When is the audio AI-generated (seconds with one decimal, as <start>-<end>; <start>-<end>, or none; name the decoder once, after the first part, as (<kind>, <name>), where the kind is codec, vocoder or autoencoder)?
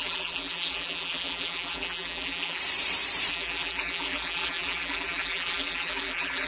0.0-2.6 (vocoder, BigVGAN v2); 3.3-6.5